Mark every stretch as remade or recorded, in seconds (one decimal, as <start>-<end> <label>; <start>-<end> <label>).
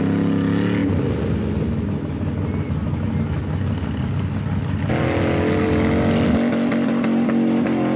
0.0-8.0 recorded